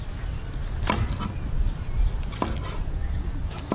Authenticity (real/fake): real